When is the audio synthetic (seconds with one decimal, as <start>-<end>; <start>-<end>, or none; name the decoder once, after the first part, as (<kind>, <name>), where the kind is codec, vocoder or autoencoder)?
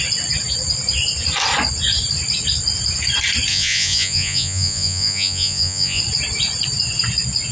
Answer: 3.5-6.0 (vocoder, Vocos)